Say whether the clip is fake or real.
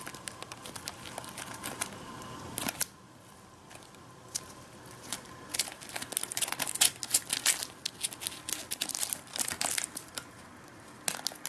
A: real